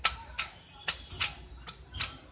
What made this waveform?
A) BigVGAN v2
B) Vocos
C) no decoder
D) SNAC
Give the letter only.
C